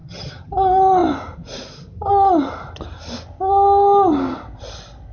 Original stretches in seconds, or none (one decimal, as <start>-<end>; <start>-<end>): 0.5-5.1